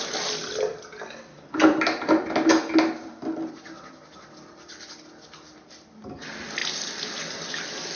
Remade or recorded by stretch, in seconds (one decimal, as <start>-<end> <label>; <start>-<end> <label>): 0.0-8.0 recorded